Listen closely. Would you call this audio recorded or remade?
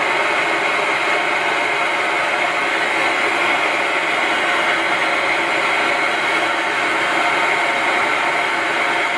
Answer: recorded